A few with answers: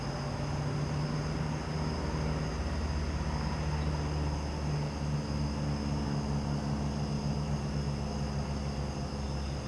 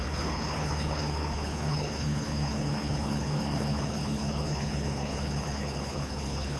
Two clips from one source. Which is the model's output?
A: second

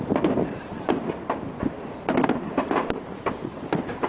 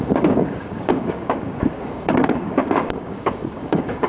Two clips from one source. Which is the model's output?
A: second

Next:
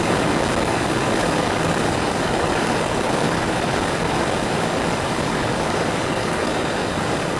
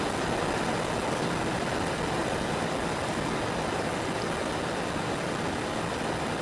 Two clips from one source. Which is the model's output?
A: first